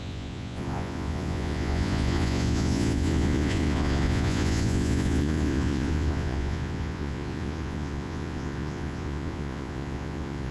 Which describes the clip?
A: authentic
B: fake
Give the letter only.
B